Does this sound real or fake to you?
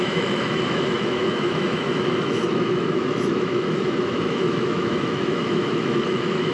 fake